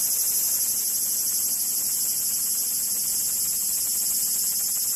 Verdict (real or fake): real